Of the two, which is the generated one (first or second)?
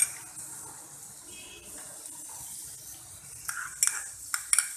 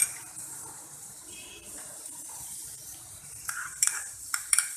second